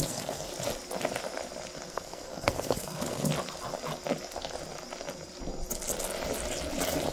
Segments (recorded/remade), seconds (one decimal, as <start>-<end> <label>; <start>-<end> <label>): 0.0-0.5 remade; 0.5-1.9 recorded; 1.9-3.3 remade; 3.3-7.1 recorded